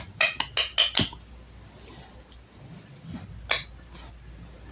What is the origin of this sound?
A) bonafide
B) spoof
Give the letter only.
A